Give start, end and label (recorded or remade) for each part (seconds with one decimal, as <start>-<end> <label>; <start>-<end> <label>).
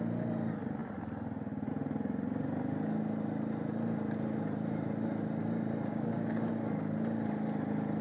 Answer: 0.0-5.9 recorded; 5.9-6.5 remade; 6.5-8.0 recorded